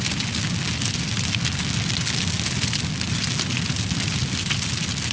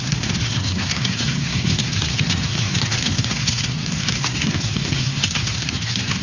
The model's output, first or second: second